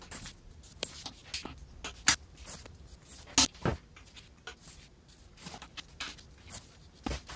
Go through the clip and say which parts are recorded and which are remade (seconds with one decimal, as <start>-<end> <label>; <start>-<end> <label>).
0.0-7.4 recorded